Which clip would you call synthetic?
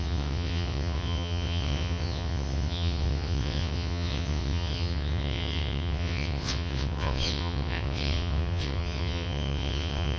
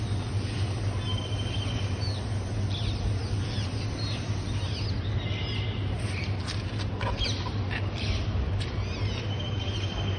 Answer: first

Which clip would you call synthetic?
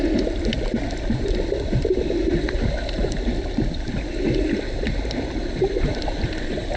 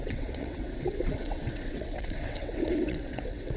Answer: second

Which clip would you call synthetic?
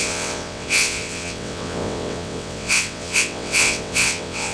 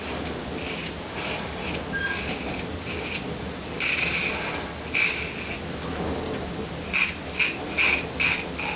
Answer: first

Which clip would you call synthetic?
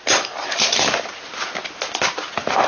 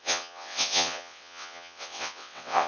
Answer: second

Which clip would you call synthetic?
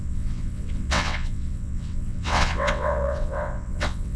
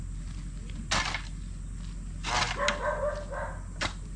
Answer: first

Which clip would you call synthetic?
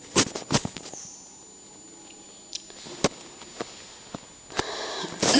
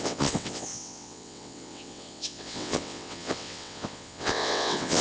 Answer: second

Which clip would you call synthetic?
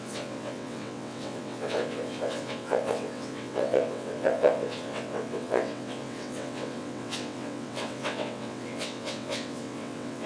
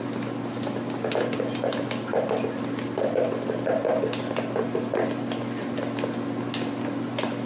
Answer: first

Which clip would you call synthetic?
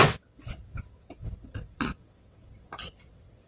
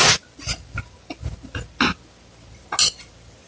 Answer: first